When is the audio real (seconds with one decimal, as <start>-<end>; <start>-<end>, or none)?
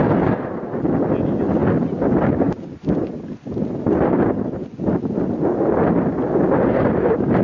0.0-7.4